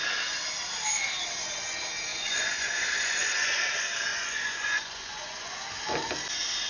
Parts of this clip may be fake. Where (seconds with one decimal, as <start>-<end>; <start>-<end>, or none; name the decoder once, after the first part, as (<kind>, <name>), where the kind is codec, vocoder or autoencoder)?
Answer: 2.1-3.6 (vocoder, Vocos); 4.1-5.6